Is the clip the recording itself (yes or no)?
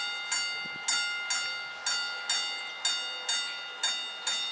yes